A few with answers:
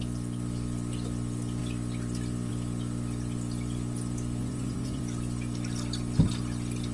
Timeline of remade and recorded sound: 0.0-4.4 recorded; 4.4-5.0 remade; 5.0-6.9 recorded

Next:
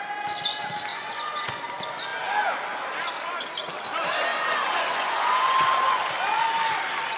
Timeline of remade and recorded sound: 0.0-0.9 recorded; 0.9-1.6 remade; 1.6-4.3 recorded; 4.3-6.1 remade; 6.1-7.2 recorded

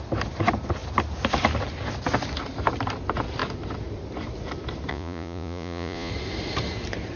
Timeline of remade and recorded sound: 0.0-4.9 recorded; 4.9-6.1 remade; 6.1-7.2 recorded

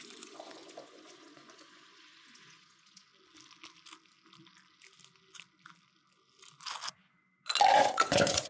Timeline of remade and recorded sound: 0.0-3.1 remade; 3.1-7.7 recorded; 7.7-8.5 remade

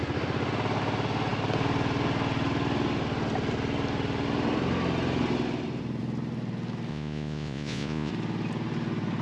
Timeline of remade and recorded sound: 0.0-6.9 recorded; 6.9-8.1 remade; 8.1-9.2 recorded